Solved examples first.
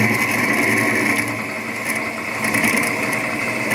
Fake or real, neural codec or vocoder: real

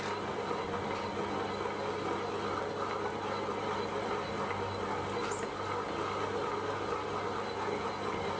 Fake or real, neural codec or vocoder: real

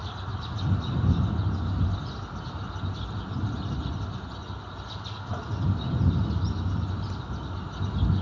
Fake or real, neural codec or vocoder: real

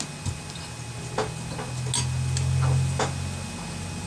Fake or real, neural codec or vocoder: real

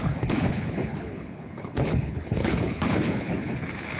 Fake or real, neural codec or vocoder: fake, codec, HILCodec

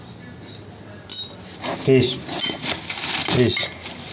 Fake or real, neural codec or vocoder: real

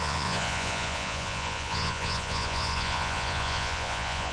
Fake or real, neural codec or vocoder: fake, vocoder, Vocos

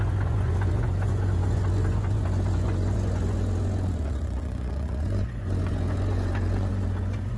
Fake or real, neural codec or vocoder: fake, vocoder, Vocos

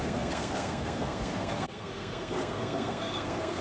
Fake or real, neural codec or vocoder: fake, codec, SNAC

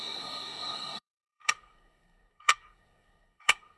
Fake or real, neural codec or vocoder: fake, codec, SNAC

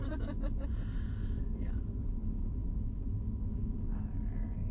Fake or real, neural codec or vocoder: real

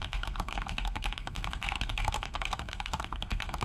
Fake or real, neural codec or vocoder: fake, codec, SNAC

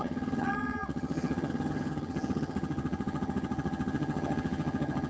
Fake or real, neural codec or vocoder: fake, vocoder, HiFi-GAN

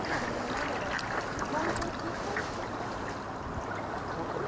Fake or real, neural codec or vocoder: real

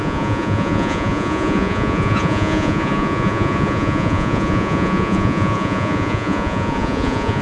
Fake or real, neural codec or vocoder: fake, vocoder, Vocos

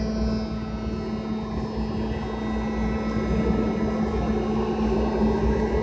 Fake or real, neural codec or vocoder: real